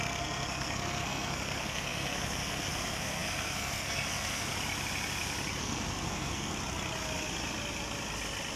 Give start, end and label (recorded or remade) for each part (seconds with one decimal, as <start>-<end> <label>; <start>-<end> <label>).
0.0-4.5 remade; 4.5-5.6 recorded; 5.6-6.5 remade; 6.5-8.6 recorded